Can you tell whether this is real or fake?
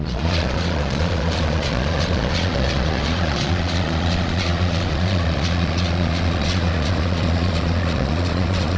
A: fake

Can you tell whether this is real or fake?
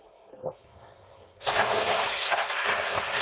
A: fake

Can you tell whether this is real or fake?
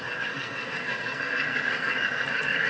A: fake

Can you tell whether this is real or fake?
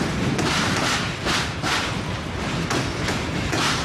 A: fake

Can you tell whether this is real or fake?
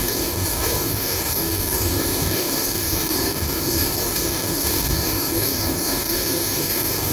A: fake